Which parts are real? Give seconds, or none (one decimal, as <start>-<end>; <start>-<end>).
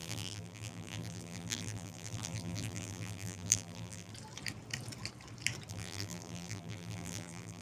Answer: 4.1-5.7